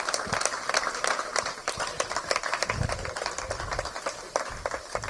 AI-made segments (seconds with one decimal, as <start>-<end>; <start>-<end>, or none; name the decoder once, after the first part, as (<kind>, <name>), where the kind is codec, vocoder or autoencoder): 0.0-5.1 (vocoder, BigVGAN v2)